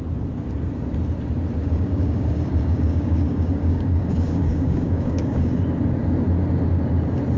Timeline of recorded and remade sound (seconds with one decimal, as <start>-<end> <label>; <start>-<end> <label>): 0.0-1.6 recorded; 1.6-5.6 remade; 5.6-7.4 recorded